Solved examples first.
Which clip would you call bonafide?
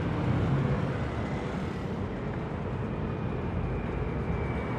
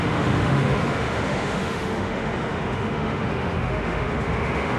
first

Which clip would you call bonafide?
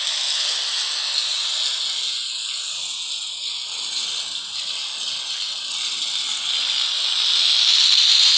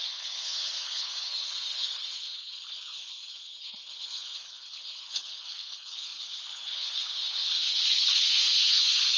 first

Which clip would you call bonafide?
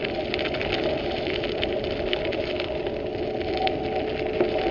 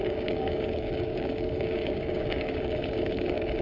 first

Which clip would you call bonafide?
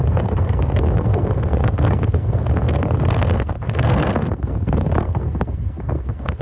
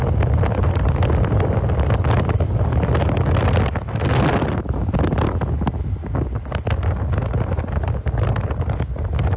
second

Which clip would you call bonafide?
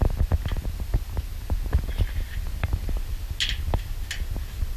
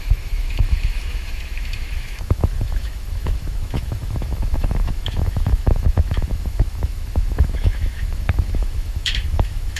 first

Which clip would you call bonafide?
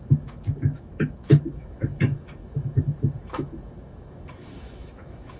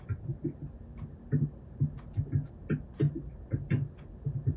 second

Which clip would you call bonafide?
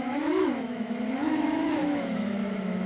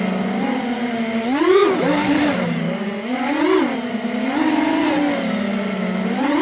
second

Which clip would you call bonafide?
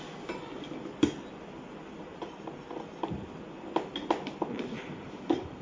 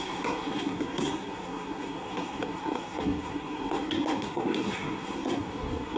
first